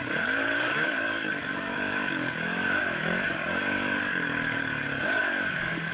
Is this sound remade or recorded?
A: remade